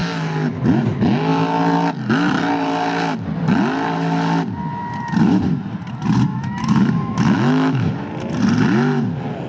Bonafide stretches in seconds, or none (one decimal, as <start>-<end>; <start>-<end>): 0.0-6.3; 7.9-9.5